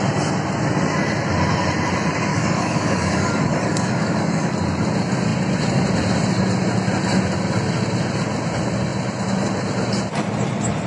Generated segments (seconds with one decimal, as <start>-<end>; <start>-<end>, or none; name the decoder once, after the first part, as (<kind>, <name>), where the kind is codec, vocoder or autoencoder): 2.3-4.5 (codec, DAC)